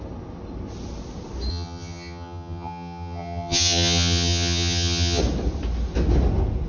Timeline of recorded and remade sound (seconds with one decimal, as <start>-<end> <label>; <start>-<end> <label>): 0.0-1.5 recorded; 1.5-5.2 remade; 5.2-6.7 recorded